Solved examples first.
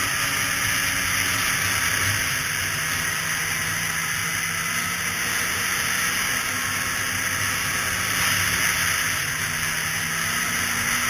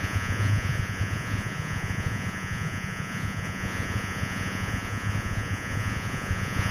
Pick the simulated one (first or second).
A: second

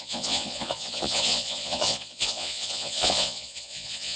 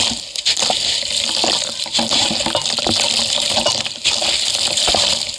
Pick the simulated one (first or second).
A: first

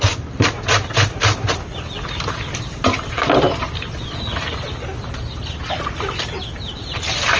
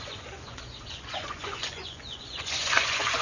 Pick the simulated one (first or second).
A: second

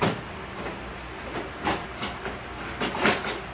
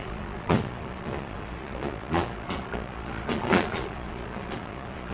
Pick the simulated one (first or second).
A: second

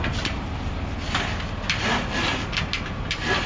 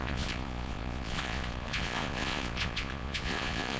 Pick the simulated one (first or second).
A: second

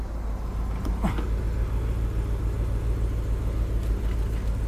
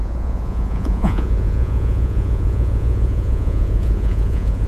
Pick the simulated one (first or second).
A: second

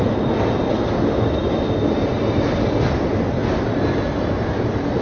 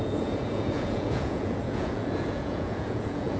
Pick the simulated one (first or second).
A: second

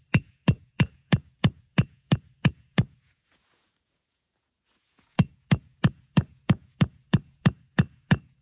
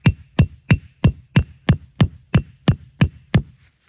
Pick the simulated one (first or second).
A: first